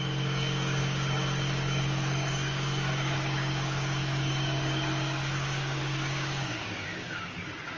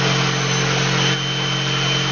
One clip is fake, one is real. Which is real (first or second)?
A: second